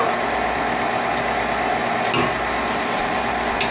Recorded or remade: recorded